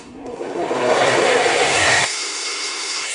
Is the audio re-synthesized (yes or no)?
yes